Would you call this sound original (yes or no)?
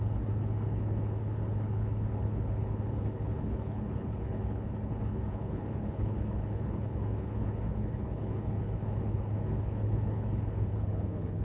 no